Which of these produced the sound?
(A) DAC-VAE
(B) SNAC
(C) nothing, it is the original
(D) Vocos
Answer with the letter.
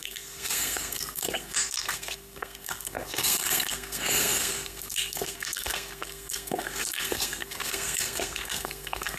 B